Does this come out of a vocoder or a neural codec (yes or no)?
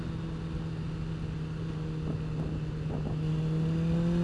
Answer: no